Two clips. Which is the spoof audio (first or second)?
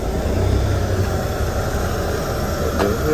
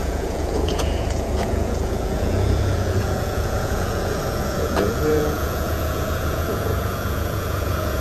second